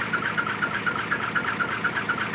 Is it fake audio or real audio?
real